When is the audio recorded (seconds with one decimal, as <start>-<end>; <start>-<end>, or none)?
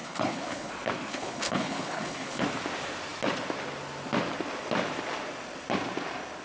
0.7-1.1; 2.4-6.4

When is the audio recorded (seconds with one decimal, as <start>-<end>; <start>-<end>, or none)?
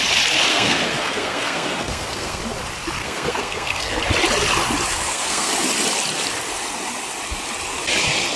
0.0-0.5; 2.4-3.0; 4.0-4.9; 5.5-8.4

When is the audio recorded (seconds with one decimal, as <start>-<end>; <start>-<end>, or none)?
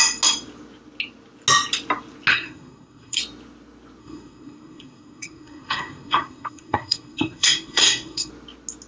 0.0-2.3; 3.2-4.0; 8.3-8.9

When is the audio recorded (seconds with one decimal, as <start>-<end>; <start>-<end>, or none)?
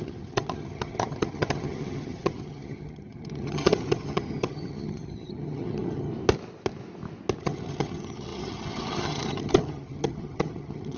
6.1-7.4